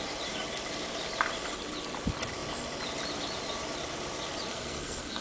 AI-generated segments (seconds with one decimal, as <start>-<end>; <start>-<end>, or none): 4.5-5.2